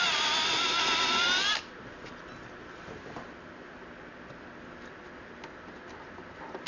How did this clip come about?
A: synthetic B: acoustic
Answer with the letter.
B